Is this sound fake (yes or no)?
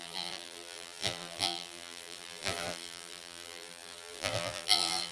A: yes